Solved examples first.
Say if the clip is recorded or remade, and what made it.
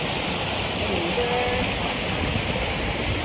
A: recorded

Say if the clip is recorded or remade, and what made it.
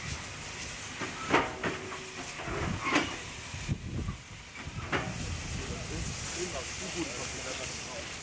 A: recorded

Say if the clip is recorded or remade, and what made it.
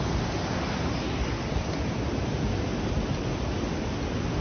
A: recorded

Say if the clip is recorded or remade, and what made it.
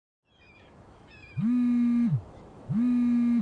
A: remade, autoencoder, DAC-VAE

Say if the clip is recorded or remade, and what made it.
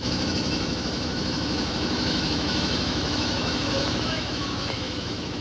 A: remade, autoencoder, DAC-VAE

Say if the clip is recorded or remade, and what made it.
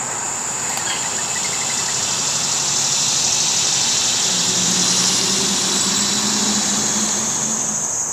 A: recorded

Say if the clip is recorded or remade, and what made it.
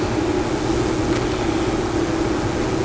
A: recorded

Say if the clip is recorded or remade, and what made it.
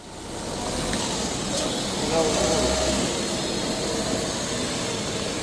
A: recorded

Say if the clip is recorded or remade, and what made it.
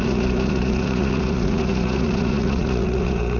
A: remade, vocoder, Vocos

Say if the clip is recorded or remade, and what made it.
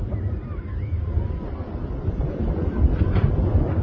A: recorded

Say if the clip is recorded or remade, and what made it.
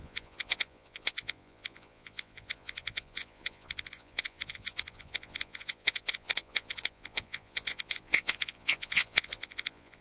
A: remade, vocoder, Vocos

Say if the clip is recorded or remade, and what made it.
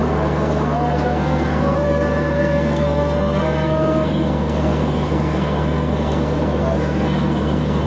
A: remade, codec, SNAC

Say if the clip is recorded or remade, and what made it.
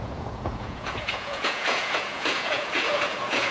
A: remade, vocoder, Vocos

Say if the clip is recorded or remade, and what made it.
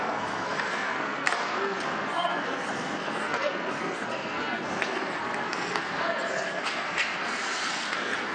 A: remade, codec, SNAC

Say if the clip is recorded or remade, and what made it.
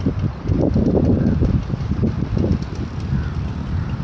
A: recorded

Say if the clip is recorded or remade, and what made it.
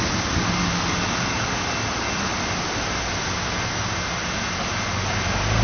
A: recorded